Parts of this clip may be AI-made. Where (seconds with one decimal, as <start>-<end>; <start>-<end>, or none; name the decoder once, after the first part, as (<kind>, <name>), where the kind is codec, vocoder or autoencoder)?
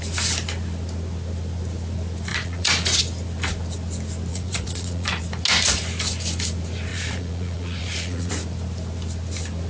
2.3-3.0 (vocoder, Vocos); 4.3-5.2; 6.9-8.3